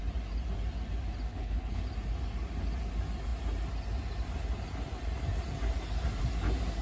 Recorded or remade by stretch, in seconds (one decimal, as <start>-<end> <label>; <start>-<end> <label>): 0.0-1.3 recorded; 1.3-1.8 remade; 1.8-6.8 recorded